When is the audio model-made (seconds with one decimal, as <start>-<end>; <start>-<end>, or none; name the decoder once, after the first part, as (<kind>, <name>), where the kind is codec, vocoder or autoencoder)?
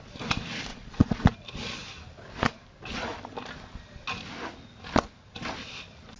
0.7-1.3 (vocoder, Vocos)